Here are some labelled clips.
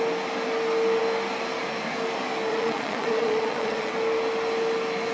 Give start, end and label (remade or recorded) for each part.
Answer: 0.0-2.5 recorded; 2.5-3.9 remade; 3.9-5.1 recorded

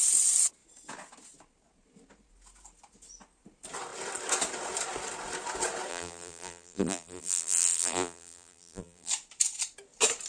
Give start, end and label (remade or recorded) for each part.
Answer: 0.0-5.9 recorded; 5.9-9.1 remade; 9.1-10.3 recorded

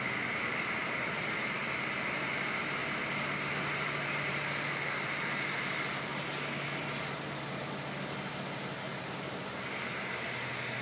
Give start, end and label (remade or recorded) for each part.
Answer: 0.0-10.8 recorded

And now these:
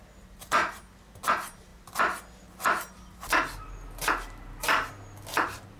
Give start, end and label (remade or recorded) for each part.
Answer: 0.0-5.8 recorded

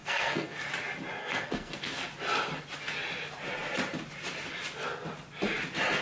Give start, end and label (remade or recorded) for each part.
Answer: 0.0-0.7 remade; 0.7-1.2 recorded; 1.2-2.1 remade; 2.1-6.0 recorded

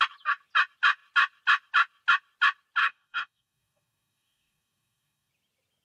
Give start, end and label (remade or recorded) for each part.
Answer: 0.0-2.8 recorded; 2.8-5.3 remade; 5.3-5.8 recorded